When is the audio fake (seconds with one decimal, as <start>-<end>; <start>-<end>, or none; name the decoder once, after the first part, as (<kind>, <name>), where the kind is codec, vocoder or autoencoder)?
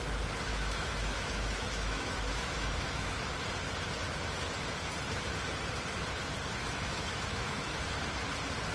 0.5-3.2 (autoencoder, DAC-VAE); 6.6-7.8